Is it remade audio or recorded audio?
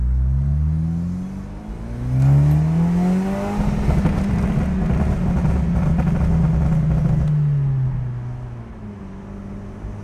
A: recorded